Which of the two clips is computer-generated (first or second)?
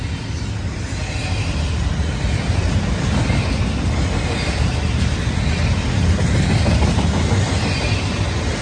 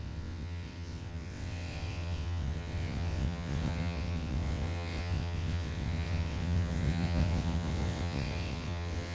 second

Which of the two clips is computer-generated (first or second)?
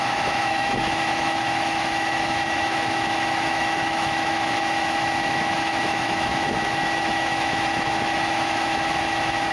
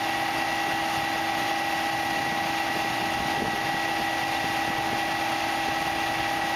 first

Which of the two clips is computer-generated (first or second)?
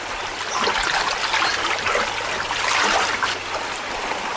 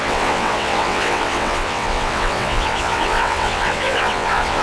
second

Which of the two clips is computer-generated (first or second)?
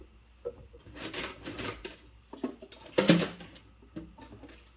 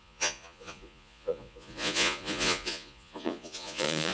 second